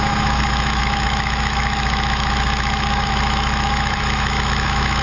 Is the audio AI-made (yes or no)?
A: yes